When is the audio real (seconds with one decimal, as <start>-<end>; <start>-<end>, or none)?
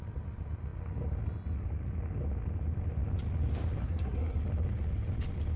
0.0-3.8; 4.4-5.6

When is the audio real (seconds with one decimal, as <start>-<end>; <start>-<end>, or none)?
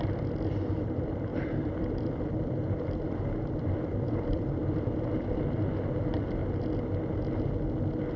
6.4-8.2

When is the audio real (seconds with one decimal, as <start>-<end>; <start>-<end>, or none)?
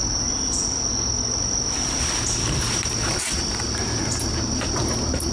0.0-5.3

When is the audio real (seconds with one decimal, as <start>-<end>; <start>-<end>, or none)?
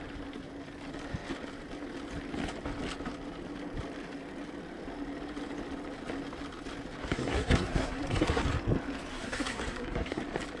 0.0-7.0; 8.4-9.1; 10.2-10.6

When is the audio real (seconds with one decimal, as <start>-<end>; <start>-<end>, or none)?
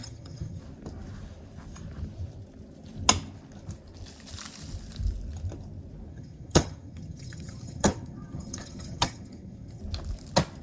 0.6-6.1; 9.8-10.6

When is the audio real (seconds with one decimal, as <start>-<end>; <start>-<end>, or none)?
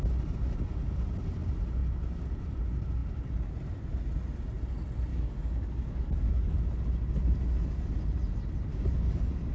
0.0-5.1; 6.6-8.7